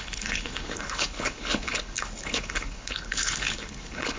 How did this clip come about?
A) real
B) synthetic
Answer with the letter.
B